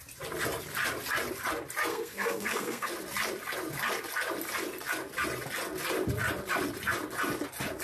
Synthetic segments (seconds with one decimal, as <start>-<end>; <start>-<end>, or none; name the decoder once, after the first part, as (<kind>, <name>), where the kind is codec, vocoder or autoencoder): 1.9-2.9 (codec, SNAC)